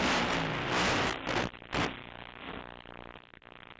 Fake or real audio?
real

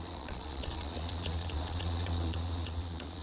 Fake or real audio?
fake